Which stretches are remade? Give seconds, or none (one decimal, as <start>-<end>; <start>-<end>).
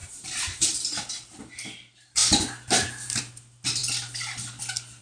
0.0-1.4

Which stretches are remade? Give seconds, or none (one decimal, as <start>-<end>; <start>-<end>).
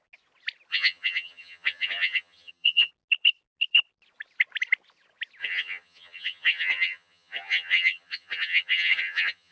0.7-2.9; 5.4-9.5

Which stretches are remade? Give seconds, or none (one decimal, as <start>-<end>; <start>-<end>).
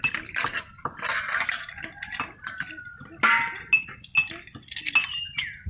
none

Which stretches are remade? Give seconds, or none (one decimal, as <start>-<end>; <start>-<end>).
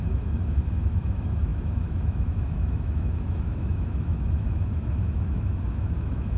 0.0-6.4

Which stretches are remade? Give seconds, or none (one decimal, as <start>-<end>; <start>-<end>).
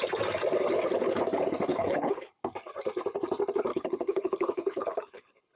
1.7-2.3; 3.7-5.6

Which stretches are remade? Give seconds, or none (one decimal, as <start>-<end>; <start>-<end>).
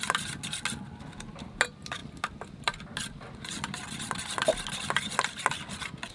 none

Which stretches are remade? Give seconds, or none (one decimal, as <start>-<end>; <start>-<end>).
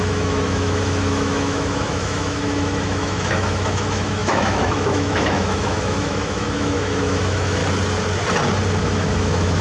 0.0-7.6; 8.8-9.6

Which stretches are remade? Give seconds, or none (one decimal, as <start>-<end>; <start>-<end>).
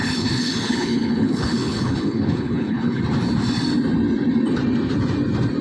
0.0-3.0